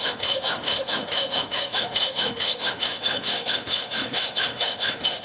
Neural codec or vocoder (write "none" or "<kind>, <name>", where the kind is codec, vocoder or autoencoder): autoencoder, DAC-VAE